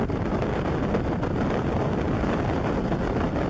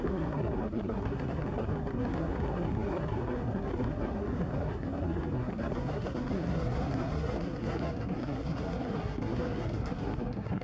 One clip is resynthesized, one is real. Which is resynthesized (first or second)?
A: second